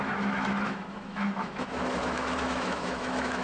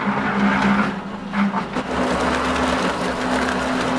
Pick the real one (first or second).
second